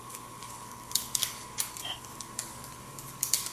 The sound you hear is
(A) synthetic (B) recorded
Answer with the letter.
A